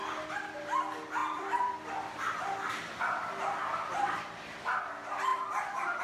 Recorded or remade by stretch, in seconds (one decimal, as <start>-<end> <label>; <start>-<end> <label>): 0.0-1.2 recorded; 1.2-1.9 remade; 1.9-6.0 recorded

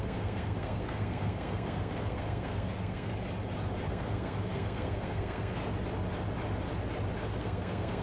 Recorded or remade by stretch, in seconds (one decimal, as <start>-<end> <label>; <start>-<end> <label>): 0.0-3.1 remade; 3.1-3.9 recorded; 3.9-5.6 remade; 5.6-7.4 recorded; 7.4-8.0 remade

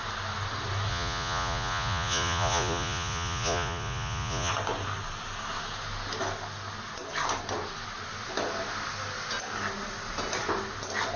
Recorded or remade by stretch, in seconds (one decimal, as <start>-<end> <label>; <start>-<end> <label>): 0.0-0.9 recorded; 0.9-4.5 remade; 4.5-11.2 recorded

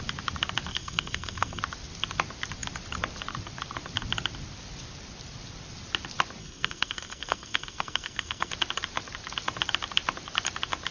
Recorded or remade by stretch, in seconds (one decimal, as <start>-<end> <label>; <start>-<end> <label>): 0.0-0.7 recorded; 0.7-1.6 remade; 1.6-6.4 recorded; 6.4-8.5 remade; 8.5-10.9 recorded

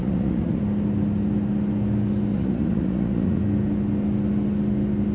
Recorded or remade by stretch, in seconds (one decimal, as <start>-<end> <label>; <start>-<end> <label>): 0.0-0.6 remade; 0.6-2.3 recorded; 2.3-3.4 remade; 3.4-5.1 recorded

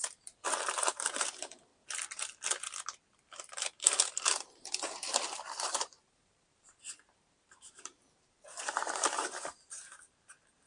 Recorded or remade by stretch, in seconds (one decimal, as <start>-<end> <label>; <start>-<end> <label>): 0.0-1.7 remade; 1.7-3.5 recorded; 3.5-10.7 remade

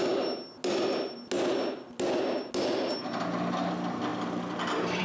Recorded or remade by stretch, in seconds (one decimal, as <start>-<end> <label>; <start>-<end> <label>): 0.0-5.0 recorded

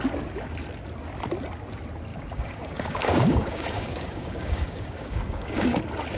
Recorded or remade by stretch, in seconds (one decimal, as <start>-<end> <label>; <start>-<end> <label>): 0.0-2.1 recorded; 2.1-5.8 remade; 5.8-6.2 recorded